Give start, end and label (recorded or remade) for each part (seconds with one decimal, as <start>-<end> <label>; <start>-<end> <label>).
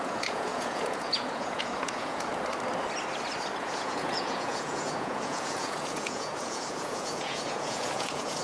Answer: 0.0-2.3 remade; 2.3-3.6 recorded; 3.6-8.4 remade